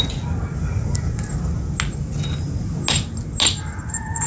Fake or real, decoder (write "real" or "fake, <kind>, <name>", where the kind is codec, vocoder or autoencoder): real